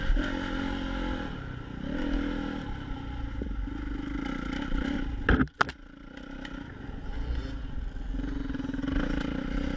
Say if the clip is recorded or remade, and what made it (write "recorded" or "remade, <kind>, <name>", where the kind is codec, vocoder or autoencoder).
recorded